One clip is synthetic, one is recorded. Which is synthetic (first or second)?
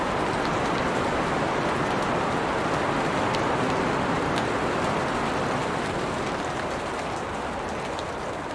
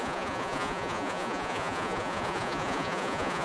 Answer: second